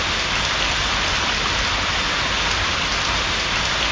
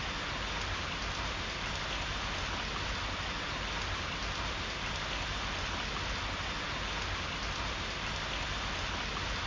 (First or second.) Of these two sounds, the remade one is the first